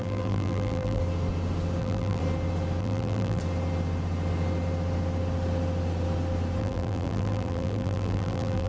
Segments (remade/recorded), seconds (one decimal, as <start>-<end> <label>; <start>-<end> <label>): 0.0-1.0 remade; 1.0-1.8 recorded; 1.8-2.2 remade; 2.2-2.8 recorded; 2.8-3.4 remade; 3.4-6.6 recorded; 6.6-8.7 remade